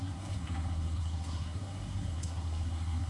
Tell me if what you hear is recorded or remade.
remade